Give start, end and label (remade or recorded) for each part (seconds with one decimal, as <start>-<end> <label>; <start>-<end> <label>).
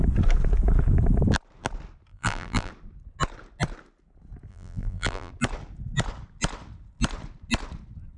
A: 0.0-2.1 recorded; 2.1-2.7 remade; 2.7-4.5 recorded; 4.5-5.3 remade; 5.3-8.2 recorded